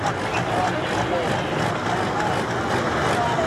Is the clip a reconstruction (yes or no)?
no